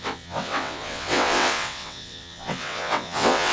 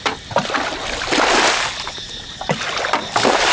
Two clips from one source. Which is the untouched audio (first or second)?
second